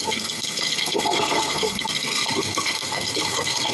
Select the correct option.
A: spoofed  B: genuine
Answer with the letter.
A